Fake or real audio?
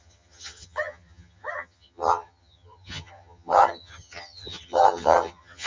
fake